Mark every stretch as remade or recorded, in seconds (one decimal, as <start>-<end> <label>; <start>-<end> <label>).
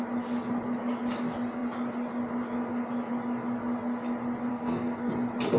0.0-4.5 recorded; 4.5-5.1 remade; 5.1-5.6 recorded